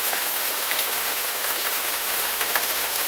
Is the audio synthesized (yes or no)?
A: yes